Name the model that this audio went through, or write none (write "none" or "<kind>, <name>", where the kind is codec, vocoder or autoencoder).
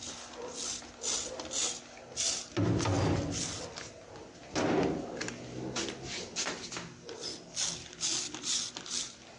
none